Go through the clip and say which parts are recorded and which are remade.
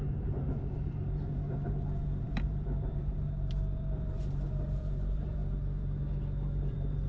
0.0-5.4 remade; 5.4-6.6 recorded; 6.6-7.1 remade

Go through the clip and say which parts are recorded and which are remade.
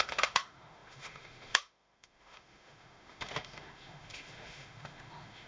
0.0-5.5 remade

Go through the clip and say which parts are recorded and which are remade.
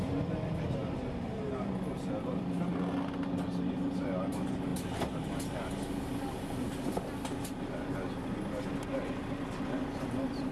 0.0-10.5 recorded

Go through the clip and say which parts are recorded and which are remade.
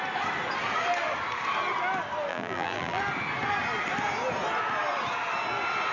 0.0-2.3 recorded; 2.3-3.0 remade; 3.0-5.9 recorded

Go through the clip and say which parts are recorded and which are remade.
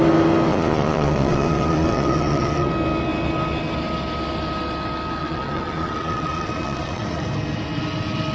0.0-0.5 recorded; 0.5-2.7 remade; 2.7-5.2 recorded; 5.2-7.2 remade; 7.2-8.3 recorded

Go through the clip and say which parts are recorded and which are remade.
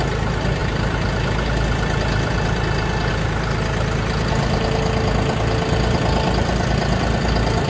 0.0-7.7 recorded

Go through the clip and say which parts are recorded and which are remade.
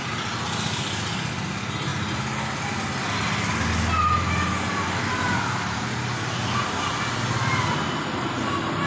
0.0-8.9 recorded